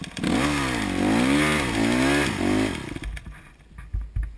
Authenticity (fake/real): real